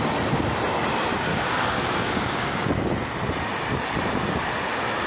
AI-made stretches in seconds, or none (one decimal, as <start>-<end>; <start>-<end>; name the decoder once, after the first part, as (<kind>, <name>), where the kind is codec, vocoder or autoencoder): 1.3-2.7 (codec, DAC)